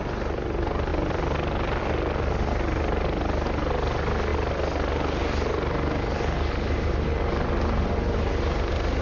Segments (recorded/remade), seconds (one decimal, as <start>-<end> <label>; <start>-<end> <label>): 0.0-9.0 recorded